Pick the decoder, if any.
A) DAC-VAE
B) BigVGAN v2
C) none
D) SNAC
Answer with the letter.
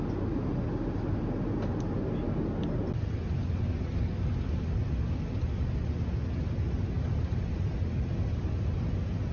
C